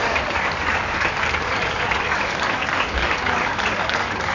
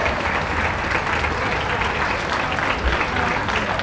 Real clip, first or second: second